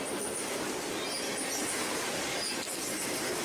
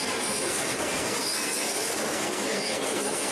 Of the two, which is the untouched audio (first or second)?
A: first